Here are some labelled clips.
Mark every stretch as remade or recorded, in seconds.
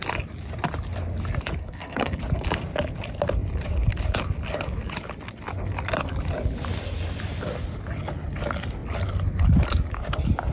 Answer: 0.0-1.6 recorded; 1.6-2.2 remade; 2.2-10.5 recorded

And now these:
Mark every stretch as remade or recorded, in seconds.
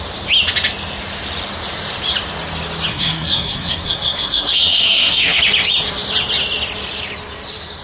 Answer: 0.0-2.9 recorded; 2.9-5.4 remade; 5.4-7.8 recorded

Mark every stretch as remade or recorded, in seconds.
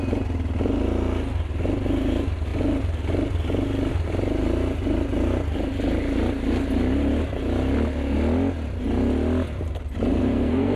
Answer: 0.0-10.2 recorded; 10.2-10.8 remade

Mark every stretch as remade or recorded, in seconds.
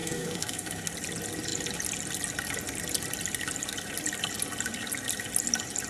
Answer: 0.0-0.9 remade; 0.9-5.9 recorded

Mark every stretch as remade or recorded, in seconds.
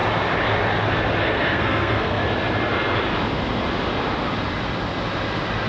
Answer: 0.0-1.2 recorded; 1.2-2.2 remade; 2.2-5.7 recorded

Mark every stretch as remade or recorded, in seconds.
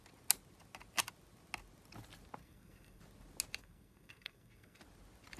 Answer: 0.0-2.4 recorded; 2.4-3.0 remade; 3.0-3.6 recorded; 3.6-4.8 remade; 4.8-5.4 recorded